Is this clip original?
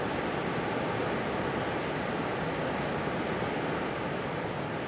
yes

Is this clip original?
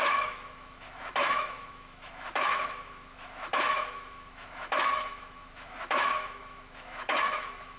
no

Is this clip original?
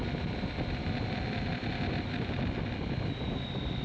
yes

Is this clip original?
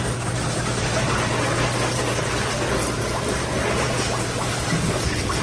yes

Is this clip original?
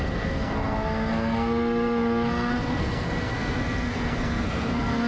no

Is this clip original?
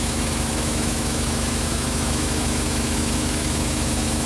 no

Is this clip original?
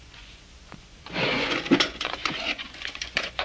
no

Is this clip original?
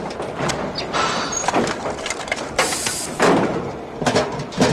yes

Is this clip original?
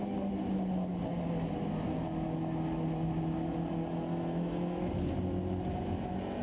yes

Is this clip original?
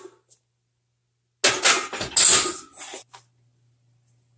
yes